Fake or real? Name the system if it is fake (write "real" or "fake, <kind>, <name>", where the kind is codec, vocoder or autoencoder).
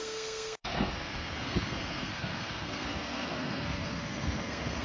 fake, codec, SNAC